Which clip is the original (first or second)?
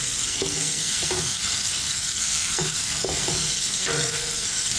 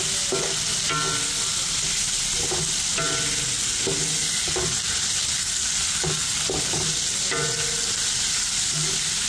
second